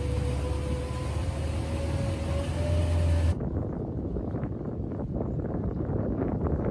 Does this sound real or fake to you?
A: real